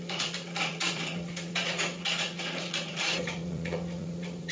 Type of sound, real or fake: fake